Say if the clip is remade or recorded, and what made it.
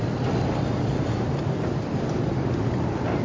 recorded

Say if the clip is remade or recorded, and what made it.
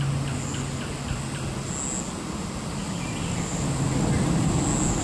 recorded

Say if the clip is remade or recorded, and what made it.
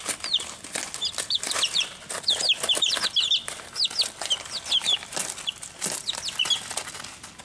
recorded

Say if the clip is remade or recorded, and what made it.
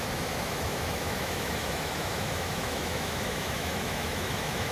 remade, autoencoder, DAC-VAE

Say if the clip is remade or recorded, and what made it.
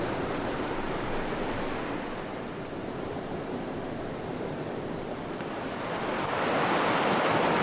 recorded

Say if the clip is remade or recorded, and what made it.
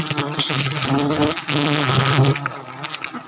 recorded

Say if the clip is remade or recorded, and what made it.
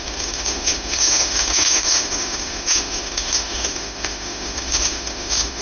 remade, autoencoder, DAC-VAE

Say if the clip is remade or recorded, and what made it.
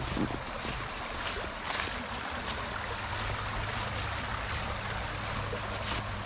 recorded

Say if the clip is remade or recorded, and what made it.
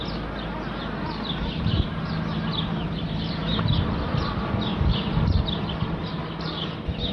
recorded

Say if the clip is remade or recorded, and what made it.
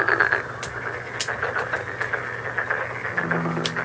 recorded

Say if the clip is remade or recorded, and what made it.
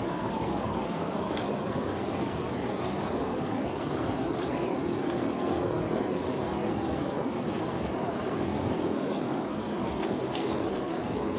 remade, codec, SNAC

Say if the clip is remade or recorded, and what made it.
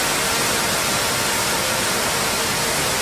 recorded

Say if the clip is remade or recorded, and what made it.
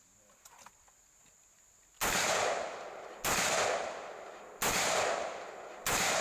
recorded